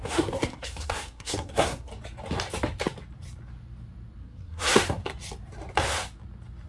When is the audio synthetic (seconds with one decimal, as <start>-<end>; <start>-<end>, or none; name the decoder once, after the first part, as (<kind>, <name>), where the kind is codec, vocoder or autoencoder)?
0.0-1.9 (codec, SNAC); 4.2-5.0